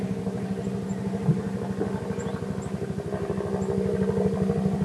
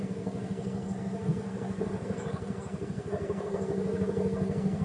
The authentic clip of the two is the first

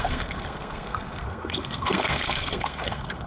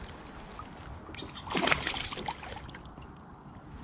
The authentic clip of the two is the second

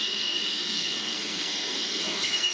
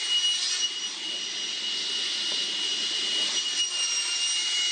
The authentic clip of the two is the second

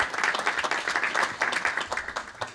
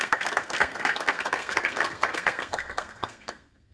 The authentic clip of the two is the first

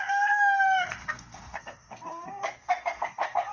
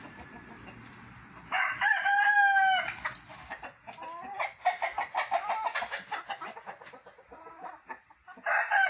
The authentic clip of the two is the second